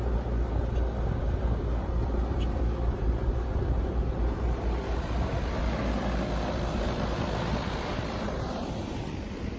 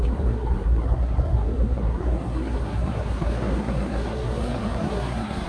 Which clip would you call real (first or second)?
first